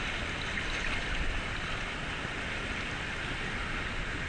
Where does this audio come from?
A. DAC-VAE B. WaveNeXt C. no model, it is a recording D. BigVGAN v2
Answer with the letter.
C